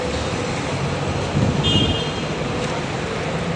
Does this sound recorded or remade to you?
recorded